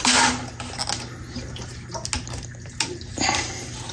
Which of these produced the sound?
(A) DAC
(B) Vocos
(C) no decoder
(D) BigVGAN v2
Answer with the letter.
C